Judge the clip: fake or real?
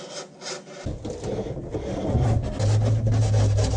real